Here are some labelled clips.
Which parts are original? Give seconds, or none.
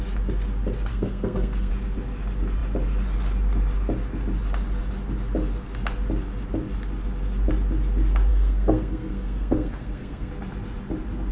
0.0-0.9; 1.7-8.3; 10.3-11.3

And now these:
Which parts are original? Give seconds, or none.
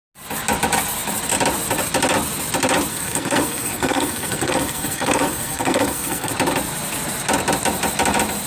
0.0-2.9; 6.3-8.5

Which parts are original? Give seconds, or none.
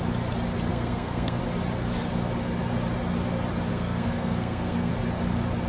0.0-0.7; 1.4-3.7; 4.9-5.7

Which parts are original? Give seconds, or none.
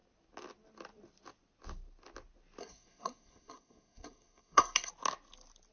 0.0-2.6; 4.9-5.7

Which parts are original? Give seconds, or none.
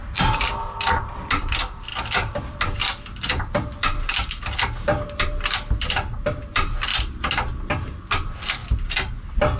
0.0-9.6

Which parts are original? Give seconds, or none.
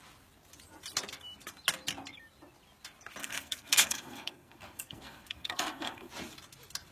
0.0-3.2; 6.1-6.9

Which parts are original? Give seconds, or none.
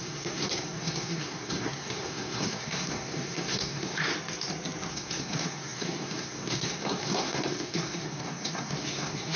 4.1-4.9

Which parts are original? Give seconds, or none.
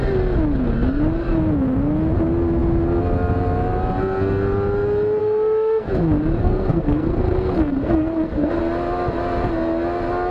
0.0-5.2; 5.9-6.4; 8.6-10.3